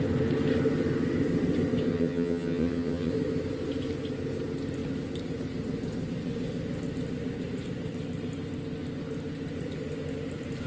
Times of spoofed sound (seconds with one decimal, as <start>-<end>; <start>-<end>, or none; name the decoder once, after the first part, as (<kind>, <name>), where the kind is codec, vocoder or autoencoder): 1.9-3.1 (vocoder, HiFi-GAN)